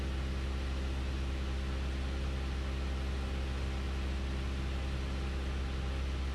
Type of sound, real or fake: real